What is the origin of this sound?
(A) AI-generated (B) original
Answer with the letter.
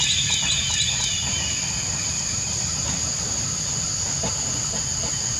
B